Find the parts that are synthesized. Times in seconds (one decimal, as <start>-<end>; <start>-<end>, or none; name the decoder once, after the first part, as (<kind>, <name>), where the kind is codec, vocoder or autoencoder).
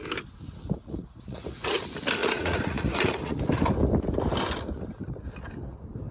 0.8-1.8 (vocoder, Vocos); 2.2-3.4